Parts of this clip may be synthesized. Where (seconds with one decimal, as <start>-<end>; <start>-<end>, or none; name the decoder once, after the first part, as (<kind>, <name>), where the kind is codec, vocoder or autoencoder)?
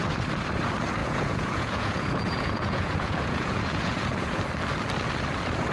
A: 1.0-4.4 (vocoder, Vocos)